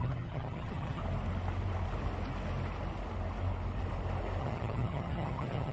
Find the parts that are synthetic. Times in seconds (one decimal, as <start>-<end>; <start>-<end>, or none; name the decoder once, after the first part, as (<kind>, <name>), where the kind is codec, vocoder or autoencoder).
0.0-1.0 (vocoder, HiFi-GAN); 4.4-5.7